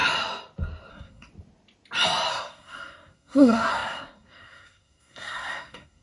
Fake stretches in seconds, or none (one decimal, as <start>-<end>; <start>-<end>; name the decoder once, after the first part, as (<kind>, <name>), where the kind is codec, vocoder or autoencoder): 0.9-1.3 (codec, SNAC); 2.3-6.0